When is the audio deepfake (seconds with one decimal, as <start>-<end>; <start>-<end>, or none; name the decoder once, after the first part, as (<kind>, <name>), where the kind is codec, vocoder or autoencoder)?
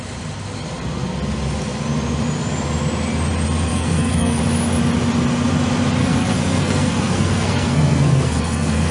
3.7-4.4 (codec, SNAC); 6.0-8.9